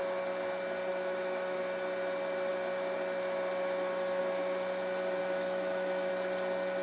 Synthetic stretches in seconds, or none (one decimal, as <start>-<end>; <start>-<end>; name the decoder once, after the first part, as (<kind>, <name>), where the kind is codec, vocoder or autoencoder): 0.9-1.6 (autoencoder, DAC-VAE); 5.2-6.1